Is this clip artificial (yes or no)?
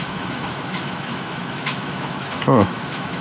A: yes